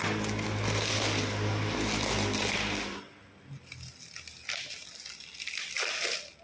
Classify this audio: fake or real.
real